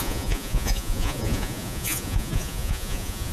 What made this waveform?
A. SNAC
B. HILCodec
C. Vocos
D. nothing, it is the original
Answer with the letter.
C